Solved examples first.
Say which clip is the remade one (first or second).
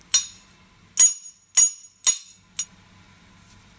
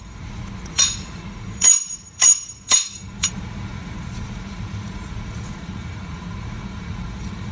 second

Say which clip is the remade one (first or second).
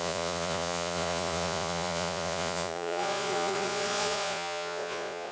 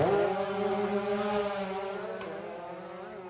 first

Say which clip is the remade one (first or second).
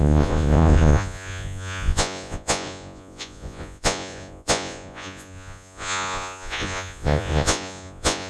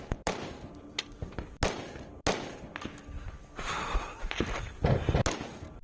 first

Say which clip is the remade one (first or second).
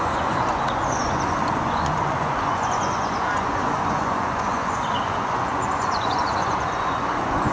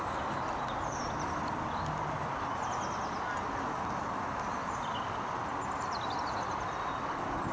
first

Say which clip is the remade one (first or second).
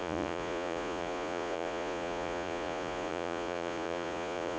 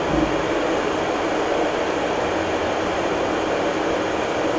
first